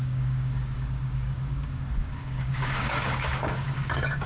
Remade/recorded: remade